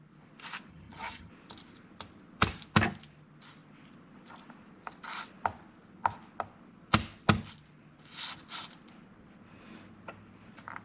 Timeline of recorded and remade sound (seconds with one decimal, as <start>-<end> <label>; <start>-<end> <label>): 0.0-0.7 recorded; 0.7-1.3 remade; 1.3-10.8 recorded